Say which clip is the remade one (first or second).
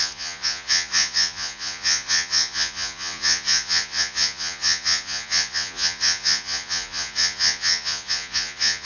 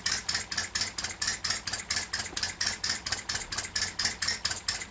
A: first